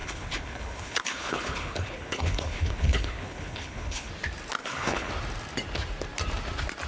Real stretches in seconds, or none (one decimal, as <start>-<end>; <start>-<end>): 4.1-4.6; 5.1-6.9